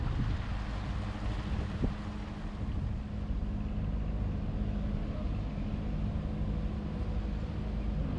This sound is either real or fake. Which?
real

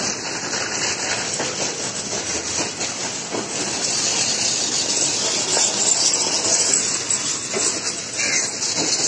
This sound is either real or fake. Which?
real